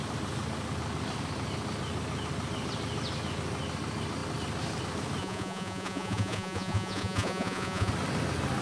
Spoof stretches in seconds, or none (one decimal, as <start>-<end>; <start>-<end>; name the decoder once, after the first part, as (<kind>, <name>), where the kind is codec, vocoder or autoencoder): 5.2-7.9 (vocoder, Vocos)